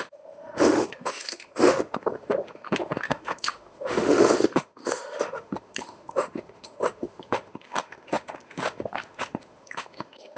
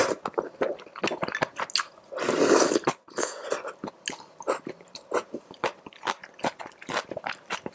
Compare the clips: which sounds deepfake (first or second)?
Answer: first